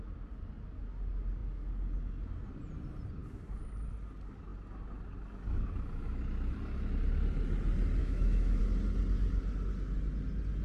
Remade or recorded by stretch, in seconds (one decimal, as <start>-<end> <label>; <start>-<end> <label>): 0.0-8.0 recorded; 8.0-8.6 remade; 8.6-10.6 recorded